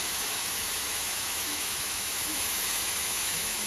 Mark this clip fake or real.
fake